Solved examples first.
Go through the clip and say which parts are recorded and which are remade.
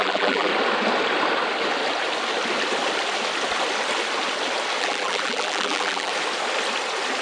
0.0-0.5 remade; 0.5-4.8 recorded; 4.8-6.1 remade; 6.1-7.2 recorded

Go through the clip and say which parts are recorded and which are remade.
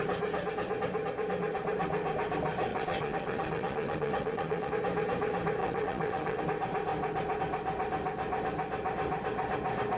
0.0-2.7 recorded; 2.7-4.7 remade; 4.7-5.6 recorded; 5.6-6.4 remade; 6.4-10.0 recorded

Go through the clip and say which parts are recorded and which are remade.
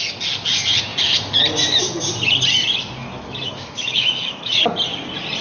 0.0-3.0 recorded; 3.0-4.6 remade; 4.6-5.4 recorded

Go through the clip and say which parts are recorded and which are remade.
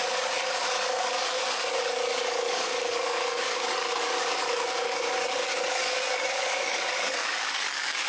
0.0-8.1 remade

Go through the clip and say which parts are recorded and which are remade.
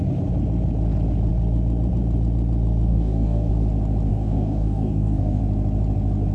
0.0-2.9 recorded; 2.9-3.5 remade; 3.5-4.1 recorded; 4.1-5.4 remade; 5.4-6.3 recorded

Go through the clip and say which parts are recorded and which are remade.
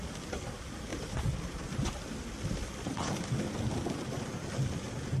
0.0-5.2 recorded